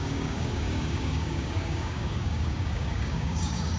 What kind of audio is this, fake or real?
fake